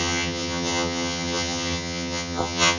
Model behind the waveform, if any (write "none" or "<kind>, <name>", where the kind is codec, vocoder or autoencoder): vocoder, HiFi-GAN